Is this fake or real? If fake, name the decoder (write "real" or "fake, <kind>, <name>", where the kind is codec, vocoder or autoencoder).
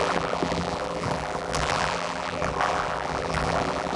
fake, vocoder, BigVGAN v2